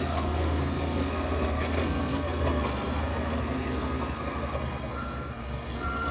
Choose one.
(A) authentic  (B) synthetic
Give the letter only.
B